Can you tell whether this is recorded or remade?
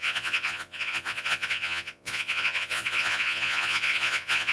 remade